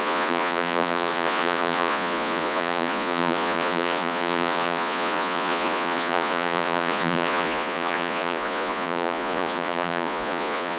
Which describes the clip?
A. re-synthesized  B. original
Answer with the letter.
A